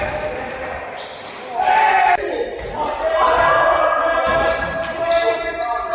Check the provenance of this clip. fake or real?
real